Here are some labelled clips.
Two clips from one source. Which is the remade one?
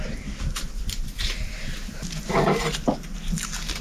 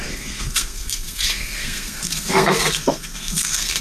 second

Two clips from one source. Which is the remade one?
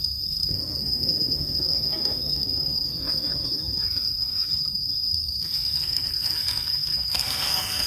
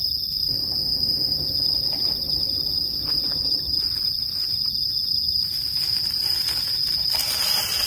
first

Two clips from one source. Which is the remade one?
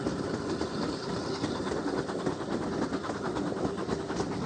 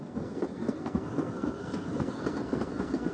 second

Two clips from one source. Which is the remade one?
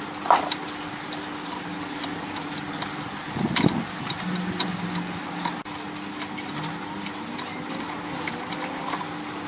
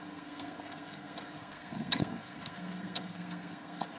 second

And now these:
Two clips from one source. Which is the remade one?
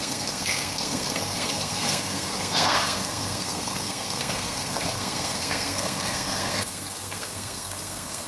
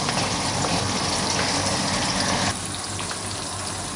first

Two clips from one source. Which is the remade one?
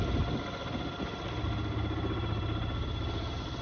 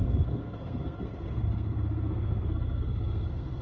second